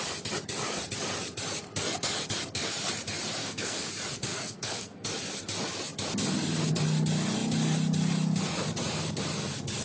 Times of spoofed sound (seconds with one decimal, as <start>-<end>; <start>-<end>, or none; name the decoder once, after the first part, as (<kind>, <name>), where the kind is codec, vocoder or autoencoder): 3.4-3.9 (codec, SNAC); 4.3-5.1